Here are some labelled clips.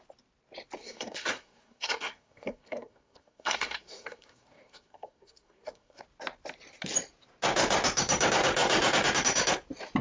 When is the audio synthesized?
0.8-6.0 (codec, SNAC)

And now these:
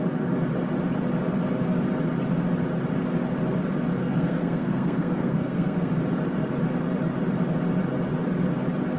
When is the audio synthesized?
4.0-5.9 (codec, SNAC)

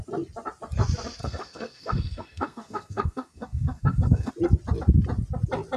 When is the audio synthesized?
1.2-4.3 (codec, SNAC)

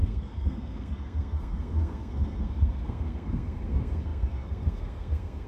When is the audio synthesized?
0.0-5.5 (codec, SNAC)

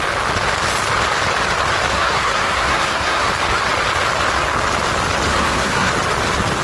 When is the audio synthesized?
1.9-3.3 (codec, SNAC); 5.3-5.9